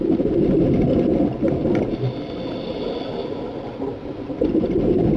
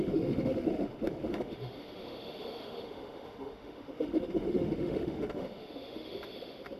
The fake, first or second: second